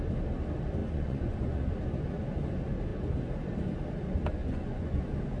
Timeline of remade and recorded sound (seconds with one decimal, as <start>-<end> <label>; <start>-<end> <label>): 0.0-0.8 recorded; 0.8-1.6 remade; 1.6-4.4 recorded; 4.4-5.0 remade; 5.0-5.4 recorded